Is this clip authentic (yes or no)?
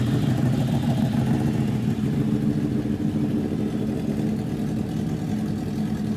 yes